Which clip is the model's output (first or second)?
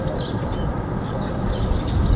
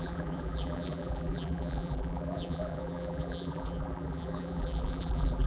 second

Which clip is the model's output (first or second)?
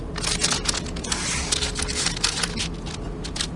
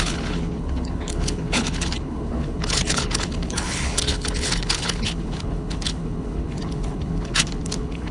second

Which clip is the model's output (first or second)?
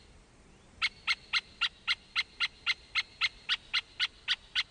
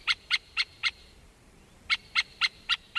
second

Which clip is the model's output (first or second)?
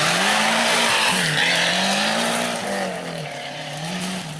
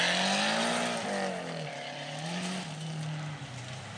first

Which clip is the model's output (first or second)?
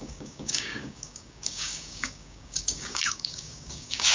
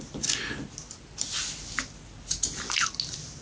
first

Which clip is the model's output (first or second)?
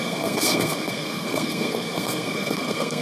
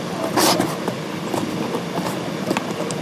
first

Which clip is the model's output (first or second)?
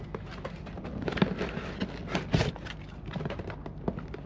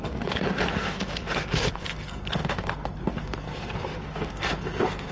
second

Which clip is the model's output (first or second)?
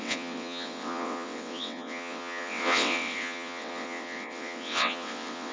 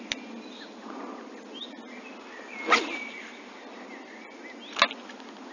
first